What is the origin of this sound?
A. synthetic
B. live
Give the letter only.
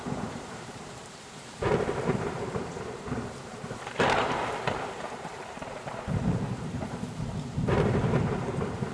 A